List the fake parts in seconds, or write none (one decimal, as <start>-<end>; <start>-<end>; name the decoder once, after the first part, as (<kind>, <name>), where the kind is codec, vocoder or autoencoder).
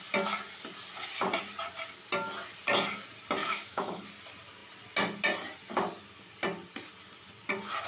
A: 3.4-4.0 (autoencoder, DAC-VAE)